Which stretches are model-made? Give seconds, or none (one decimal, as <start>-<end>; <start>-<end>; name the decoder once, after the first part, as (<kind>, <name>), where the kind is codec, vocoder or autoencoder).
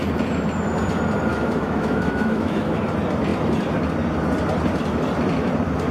1.3-2.8 (autoencoder, DAC-VAE)